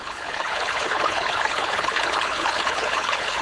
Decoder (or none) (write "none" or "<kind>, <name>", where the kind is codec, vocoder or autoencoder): codec, HILCodec